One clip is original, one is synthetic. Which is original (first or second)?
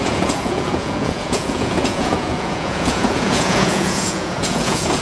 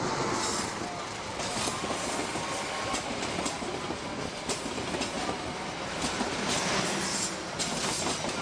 second